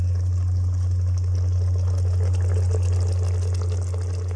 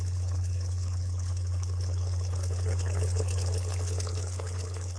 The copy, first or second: second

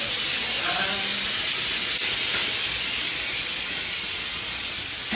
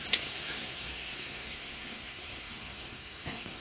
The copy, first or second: second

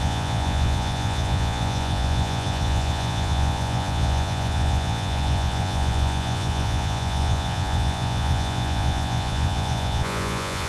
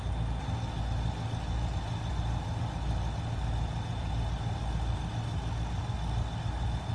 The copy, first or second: first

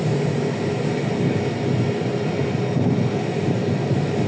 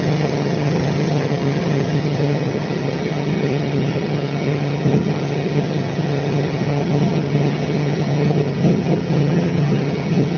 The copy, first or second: second